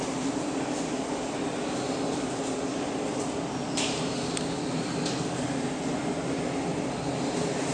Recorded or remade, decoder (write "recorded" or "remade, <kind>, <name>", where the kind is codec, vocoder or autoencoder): recorded